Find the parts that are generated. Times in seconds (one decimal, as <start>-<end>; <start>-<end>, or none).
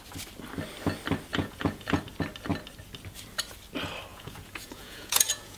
1.3-2.0; 4.1-5.6